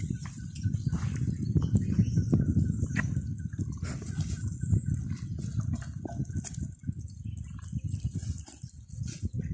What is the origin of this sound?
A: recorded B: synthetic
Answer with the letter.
A